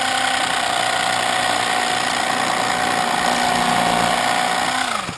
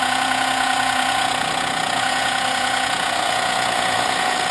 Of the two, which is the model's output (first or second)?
second